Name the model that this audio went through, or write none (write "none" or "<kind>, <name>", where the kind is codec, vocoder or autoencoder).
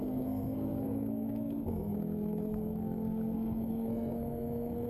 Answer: codec, SNAC